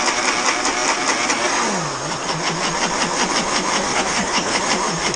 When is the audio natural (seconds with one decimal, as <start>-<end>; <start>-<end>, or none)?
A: 0.0-3.9; 4.6-5.2